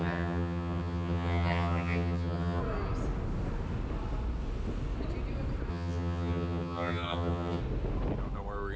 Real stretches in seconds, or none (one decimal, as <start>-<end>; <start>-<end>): 2.6-5.7; 7.6-8.8